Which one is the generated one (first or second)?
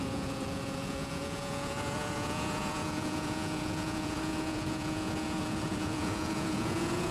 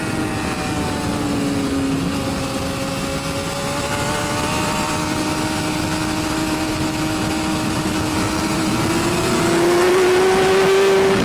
first